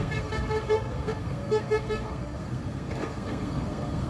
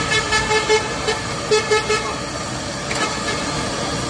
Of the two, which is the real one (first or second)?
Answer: second